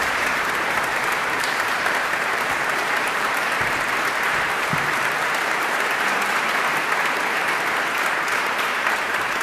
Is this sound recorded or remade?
remade